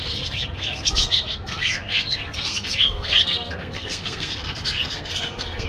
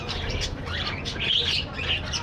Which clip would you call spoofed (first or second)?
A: first